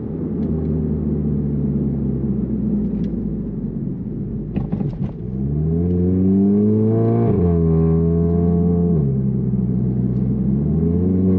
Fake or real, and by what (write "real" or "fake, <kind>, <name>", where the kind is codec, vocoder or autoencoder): real